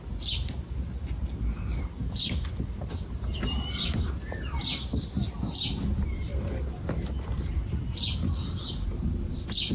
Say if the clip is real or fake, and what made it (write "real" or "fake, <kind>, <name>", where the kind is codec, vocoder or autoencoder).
real